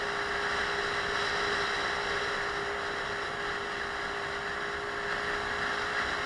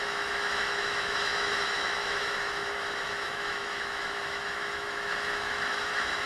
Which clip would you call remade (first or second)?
second